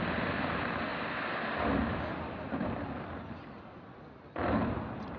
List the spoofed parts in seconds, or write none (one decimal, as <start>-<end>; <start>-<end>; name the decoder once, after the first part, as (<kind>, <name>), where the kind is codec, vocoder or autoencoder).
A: none